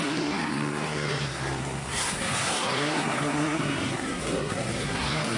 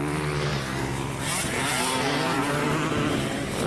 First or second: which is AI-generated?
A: first